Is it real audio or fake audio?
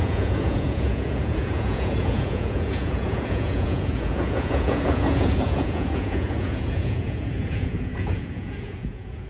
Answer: fake